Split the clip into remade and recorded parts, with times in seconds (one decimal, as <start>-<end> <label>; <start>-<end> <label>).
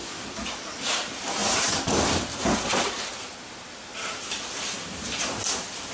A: 0.0-0.9 remade; 0.9-1.4 recorded; 1.4-4.4 remade; 4.4-5.9 recorded